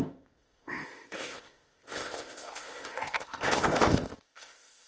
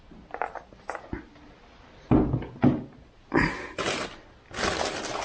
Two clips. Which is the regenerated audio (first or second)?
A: first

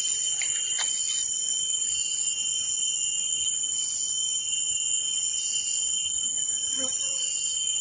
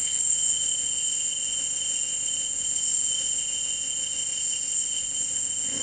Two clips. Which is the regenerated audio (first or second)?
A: second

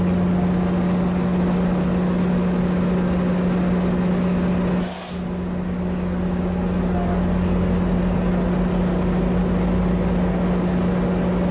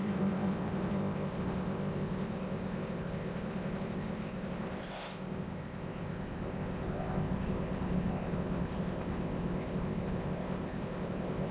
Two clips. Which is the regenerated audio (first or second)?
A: second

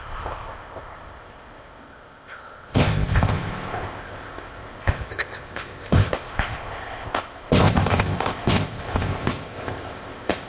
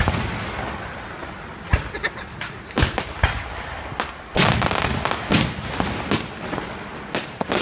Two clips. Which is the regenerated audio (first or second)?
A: first